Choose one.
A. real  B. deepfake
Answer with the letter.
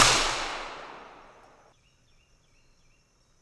A